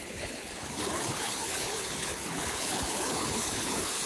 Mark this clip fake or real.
fake